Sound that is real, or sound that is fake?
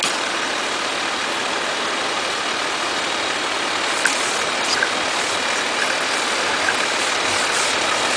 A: real